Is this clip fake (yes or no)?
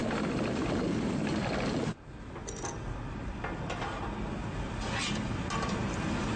no